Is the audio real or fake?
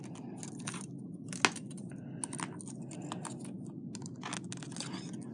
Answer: real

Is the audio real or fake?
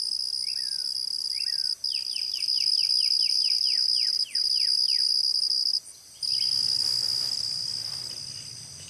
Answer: real